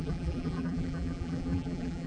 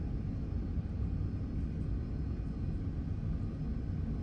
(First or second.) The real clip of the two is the second